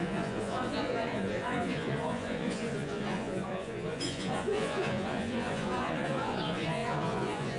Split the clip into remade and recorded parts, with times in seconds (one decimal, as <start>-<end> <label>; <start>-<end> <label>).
0.0-7.6 remade